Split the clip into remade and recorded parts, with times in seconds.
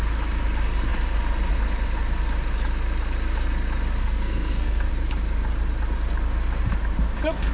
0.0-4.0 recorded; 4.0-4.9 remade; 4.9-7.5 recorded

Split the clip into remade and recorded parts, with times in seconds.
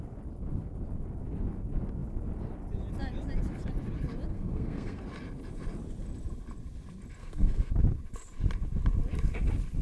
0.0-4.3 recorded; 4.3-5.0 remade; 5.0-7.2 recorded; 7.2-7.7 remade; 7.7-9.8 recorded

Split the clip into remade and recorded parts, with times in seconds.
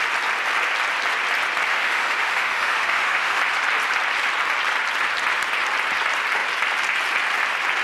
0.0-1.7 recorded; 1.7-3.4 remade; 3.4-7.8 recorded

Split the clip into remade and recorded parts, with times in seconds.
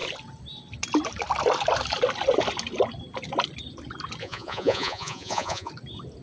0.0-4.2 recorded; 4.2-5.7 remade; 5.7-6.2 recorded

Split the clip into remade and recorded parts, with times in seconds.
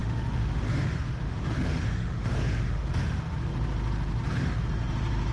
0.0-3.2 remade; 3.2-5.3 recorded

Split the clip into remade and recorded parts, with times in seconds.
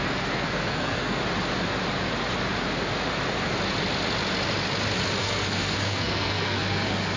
0.0-1.2 remade; 1.2-5.2 recorded; 5.2-7.2 remade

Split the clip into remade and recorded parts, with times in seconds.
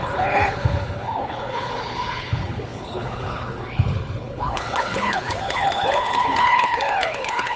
0.0-7.6 remade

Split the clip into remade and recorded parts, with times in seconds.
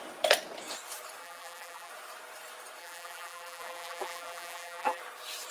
0.0-1.2 recorded; 1.2-1.9 remade; 1.9-2.8 recorded; 2.8-5.0 remade; 5.0-5.5 recorded